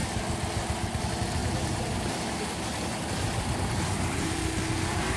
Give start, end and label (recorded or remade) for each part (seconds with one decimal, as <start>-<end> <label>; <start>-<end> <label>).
0.0-1.4 recorded; 1.4-4.5 remade; 4.5-5.2 recorded